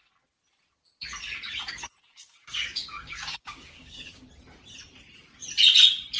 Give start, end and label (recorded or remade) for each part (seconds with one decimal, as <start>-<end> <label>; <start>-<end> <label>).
0.0-2.1 recorded; 2.1-4.3 remade; 4.3-6.2 recorded